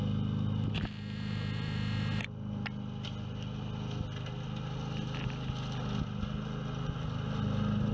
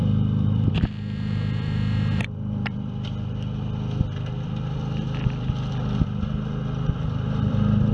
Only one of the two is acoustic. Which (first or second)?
first